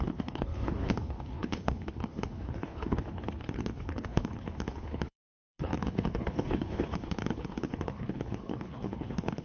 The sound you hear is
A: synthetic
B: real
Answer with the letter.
A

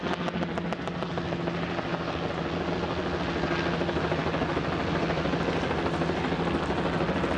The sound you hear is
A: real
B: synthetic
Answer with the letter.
A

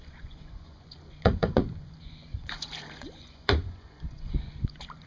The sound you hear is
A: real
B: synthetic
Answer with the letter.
B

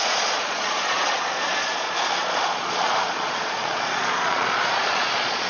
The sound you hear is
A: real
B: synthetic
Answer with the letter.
B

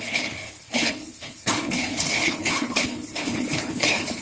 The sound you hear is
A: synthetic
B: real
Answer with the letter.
A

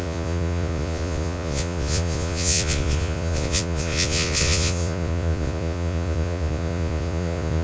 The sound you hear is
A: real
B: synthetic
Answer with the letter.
B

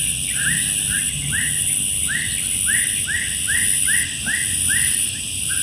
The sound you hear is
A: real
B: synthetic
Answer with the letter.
A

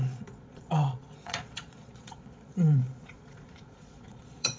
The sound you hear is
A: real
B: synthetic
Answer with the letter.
B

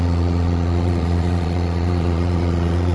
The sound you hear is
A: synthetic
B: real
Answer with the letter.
A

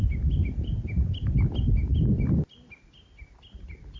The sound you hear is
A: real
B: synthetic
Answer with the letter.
A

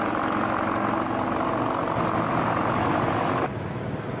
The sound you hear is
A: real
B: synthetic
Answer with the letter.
A